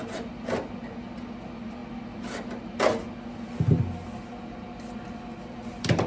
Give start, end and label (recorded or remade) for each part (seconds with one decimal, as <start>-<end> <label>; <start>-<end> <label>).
0.0-6.1 recorded